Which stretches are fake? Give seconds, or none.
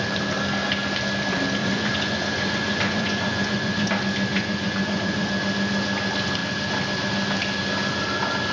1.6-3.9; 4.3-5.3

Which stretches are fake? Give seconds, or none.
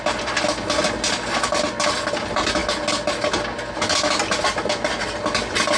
none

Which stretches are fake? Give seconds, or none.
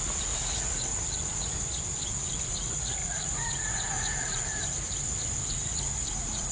0.0-0.9; 2.3-4.6; 6.1-6.5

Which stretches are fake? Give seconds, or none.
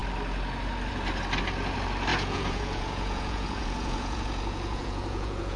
2.1-5.6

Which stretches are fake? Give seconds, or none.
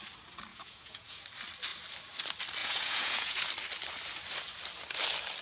0.5-1.2; 2.6-3.5